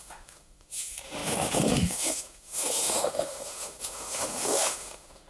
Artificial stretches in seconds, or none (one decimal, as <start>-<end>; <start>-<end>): 0.0-5.3